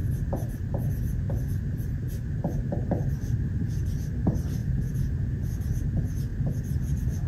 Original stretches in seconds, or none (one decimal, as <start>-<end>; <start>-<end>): 0.0-4.6; 5.3-7.3